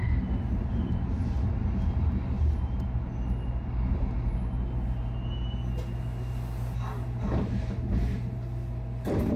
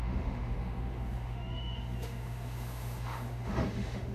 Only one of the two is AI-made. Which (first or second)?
second